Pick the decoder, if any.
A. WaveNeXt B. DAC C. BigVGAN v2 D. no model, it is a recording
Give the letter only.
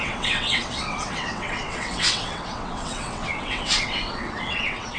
A